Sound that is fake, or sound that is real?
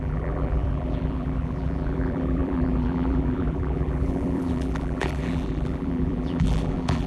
fake